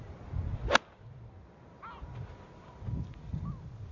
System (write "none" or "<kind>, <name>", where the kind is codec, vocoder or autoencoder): none